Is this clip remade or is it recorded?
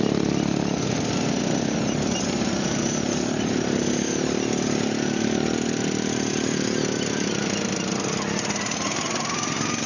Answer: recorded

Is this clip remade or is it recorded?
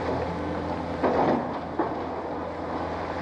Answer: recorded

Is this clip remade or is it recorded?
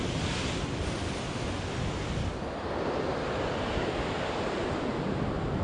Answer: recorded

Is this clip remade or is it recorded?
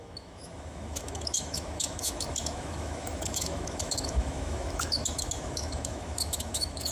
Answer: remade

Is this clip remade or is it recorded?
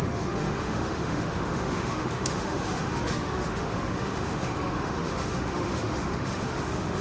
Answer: remade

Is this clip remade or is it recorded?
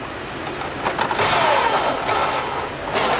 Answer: recorded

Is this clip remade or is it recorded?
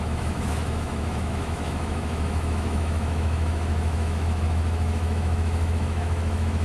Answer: remade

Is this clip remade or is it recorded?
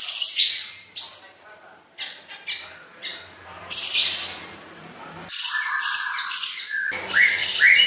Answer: recorded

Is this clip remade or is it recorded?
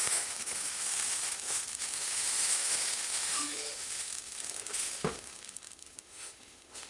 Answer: remade